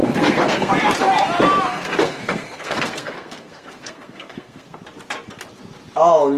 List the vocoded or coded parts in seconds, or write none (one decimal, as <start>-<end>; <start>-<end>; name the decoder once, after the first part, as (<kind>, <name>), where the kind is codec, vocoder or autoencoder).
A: 0.0-0.7 (codec, SNAC); 1.7-4.8